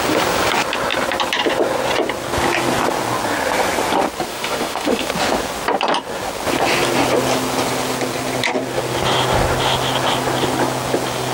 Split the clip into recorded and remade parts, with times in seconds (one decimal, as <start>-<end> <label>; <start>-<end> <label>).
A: 0.0-4.3 recorded; 4.3-5.1 remade; 5.1-11.3 recorded